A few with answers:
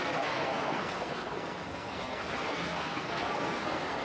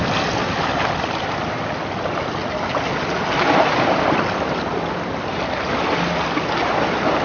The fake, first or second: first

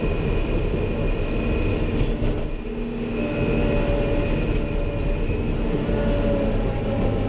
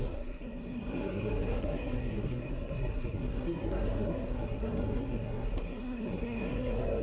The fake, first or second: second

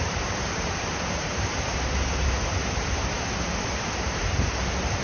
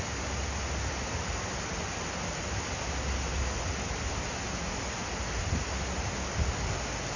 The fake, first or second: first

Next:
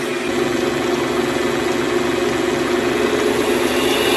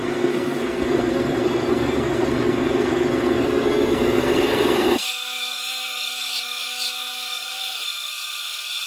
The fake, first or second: second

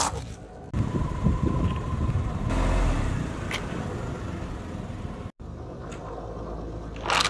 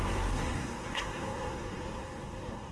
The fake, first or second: second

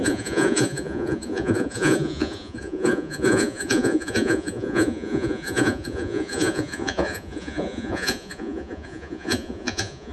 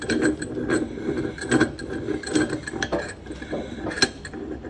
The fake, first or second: first